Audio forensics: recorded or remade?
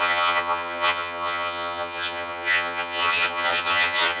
remade